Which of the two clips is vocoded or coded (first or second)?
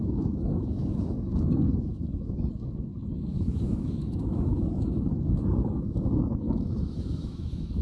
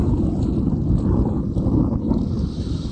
first